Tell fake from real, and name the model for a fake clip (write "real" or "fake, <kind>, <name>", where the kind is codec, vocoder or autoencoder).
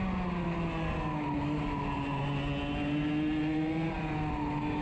real